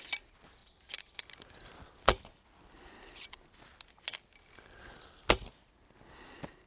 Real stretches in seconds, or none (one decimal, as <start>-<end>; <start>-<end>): 0.0-6.7